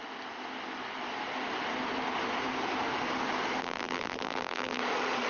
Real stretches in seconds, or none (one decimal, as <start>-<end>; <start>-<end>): 0.0-3.6; 4.8-5.3